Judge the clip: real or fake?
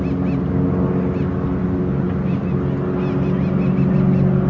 real